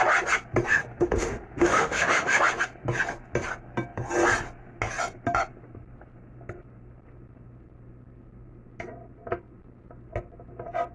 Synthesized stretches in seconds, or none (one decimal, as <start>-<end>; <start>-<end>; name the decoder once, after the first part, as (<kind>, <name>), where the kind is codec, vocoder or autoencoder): 0.7-2.4 (autoencoder, DAC-VAE)